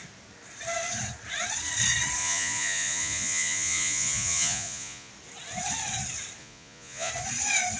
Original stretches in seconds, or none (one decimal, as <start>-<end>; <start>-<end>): 0.0-2.2; 5.1-6.4; 7.1-7.8